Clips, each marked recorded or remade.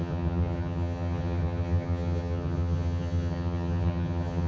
remade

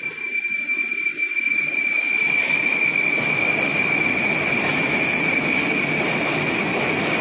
remade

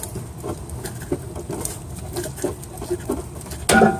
recorded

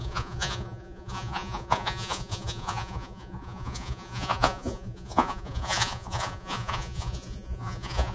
remade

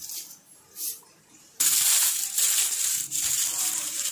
remade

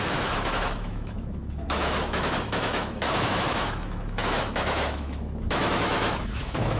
remade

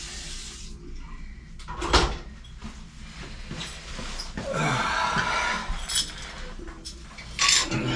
recorded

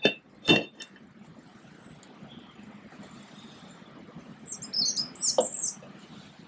recorded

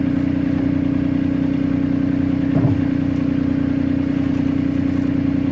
recorded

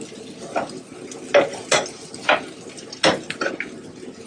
recorded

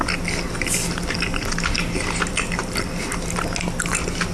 recorded